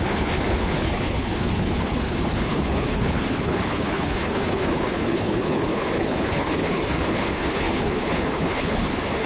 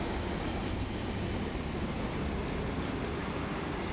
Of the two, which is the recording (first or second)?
second